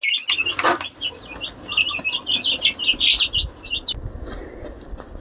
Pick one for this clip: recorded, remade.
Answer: recorded